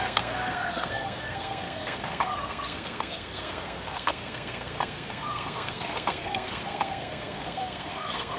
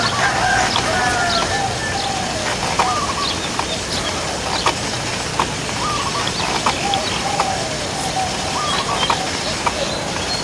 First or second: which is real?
second